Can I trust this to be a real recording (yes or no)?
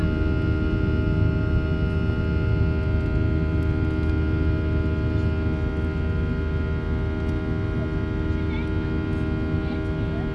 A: yes